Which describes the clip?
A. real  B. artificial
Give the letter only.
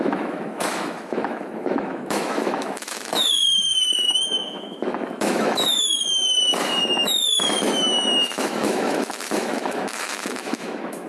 B